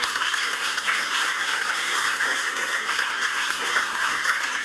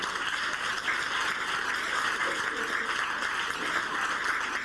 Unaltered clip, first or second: second